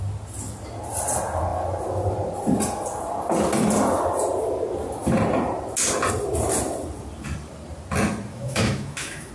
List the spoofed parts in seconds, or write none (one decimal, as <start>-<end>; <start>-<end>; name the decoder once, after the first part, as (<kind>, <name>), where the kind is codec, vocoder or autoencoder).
8.3-9.3 (autoencoder, DAC-VAE)